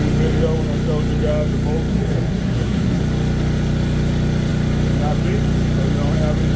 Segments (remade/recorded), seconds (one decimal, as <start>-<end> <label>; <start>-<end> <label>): 0.0-1.9 recorded; 1.9-3.0 remade; 3.0-6.6 recorded